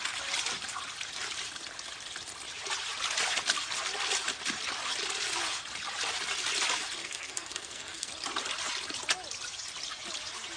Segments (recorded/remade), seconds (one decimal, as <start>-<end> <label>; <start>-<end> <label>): 0.0-7.0 recorded; 7.0-8.1 remade; 8.1-10.6 recorded